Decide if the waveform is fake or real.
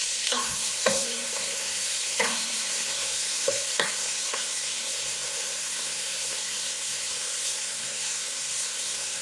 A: fake